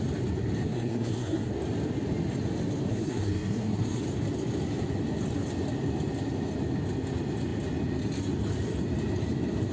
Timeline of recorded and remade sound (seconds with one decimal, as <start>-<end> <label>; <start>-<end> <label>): 0.0-0.6 recorded; 0.6-1.5 remade; 1.5-2.9 recorded; 2.9-4.0 remade; 4.0-9.7 recorded

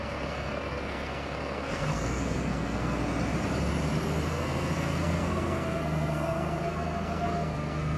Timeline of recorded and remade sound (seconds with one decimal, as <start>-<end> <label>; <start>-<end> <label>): 0.0-3.0 remade; 3.0-4.3 recorded; 4.3-8.0 remade

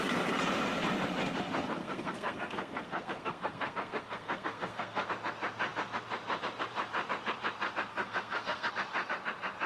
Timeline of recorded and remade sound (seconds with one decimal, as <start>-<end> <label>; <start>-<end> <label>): 0.0-1.8 recorded; 1.8-5.1 remade; 5.1-7.9 recorded; 7.9-8.7 remade; 8.7-9.7 recorded

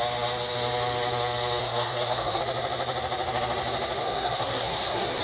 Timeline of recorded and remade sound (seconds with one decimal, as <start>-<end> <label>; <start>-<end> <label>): 0.0-1.6 recorded; 1.6-2.4 remade; 2.4-4.0 recorded; 4.0-5.2 remade

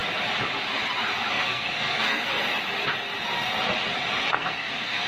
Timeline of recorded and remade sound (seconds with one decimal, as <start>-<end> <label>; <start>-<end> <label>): 0.0-1.3 recorded; 1.3-2.5 remade; 2.5-4.1 recorded; 4.1-5.1 remade

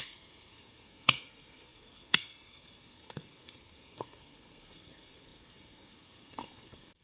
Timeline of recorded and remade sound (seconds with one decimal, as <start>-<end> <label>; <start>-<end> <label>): 0.0-7.0 remade

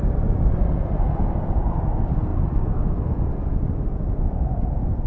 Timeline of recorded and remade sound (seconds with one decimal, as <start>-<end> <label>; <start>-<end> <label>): 0.0-5.1 recorded

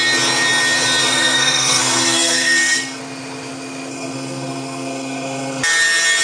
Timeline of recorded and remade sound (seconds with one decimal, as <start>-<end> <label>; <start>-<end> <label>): 0.0-1.0 recorded; 1.0-3.0 remade; 3.0-3.9 recorded; 3.9-5.6 remade; 5.6-6.2 recorded